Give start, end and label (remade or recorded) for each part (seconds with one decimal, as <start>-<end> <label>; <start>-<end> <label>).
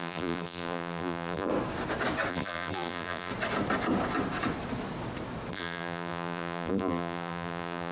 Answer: 0.0-1.5 remade; 1.5-2.3 recorded; 2.3-3.3 remade; 3.3-5.5 recorded; 5.5-7.9 remade